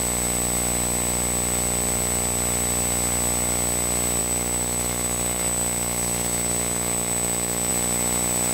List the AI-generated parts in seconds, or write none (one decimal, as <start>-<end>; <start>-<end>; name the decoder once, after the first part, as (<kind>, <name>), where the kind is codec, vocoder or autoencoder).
4.2-7.7 (autoencoder, DAC-VAE)